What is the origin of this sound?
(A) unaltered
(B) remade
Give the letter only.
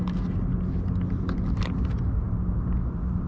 A